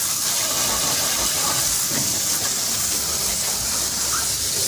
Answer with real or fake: real